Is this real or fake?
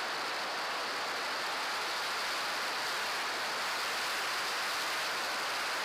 real